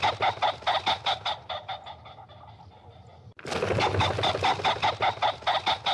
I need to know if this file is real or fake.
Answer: real